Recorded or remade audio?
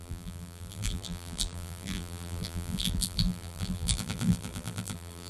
remade